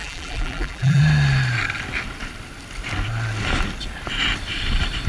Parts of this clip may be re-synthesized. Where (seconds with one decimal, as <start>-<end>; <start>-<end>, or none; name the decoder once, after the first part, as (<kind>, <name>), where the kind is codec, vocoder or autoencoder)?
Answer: 0.0-1.0 (vocoder, BigVGAN v2)